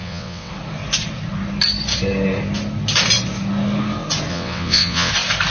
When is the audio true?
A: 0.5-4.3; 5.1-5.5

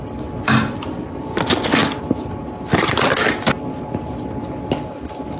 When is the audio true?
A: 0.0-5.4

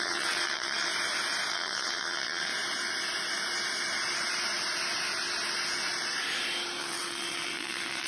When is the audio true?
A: 0.9-1.5; 2.5-6.8

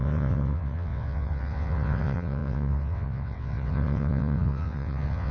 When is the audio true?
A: none

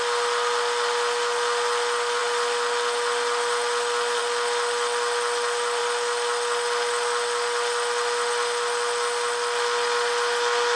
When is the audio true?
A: 0.0-10.8

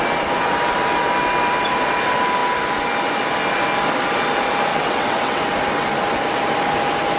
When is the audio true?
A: 0.0-4.7; 5.4-7.2

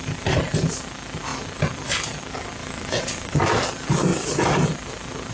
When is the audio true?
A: 0.0-2.6; 3.4-5.3

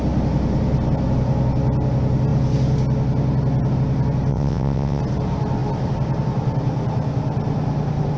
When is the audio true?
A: 0.0-4.3; 5.0-8.2